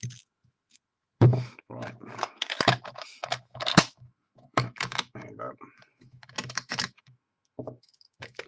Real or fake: fake